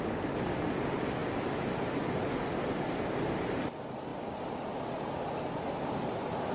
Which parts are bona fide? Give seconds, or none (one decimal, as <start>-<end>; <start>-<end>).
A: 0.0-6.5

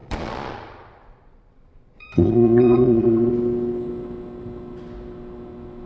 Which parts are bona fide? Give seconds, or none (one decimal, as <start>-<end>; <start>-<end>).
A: 3.3-5.9

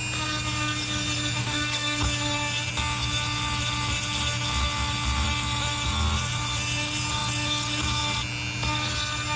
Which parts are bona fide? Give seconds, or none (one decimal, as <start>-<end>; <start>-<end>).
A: 0.0-1.4; 2.0-9.4

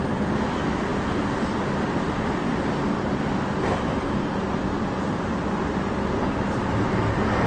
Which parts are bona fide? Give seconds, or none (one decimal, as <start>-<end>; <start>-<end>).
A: 0.0-7.5